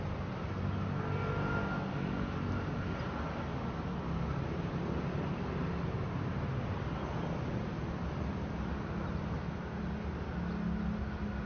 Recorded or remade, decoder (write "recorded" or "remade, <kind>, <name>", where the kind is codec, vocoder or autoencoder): recorded